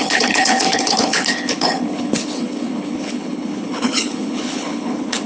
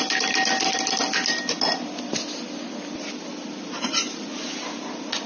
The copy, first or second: first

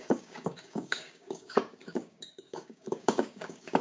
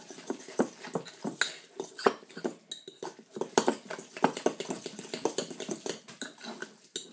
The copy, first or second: first